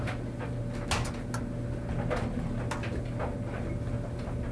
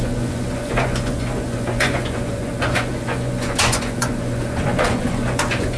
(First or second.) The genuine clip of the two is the first